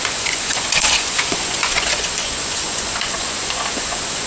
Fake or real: fake